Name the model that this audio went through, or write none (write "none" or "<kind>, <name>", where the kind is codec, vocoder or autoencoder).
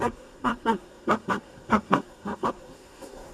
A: codec, SNAC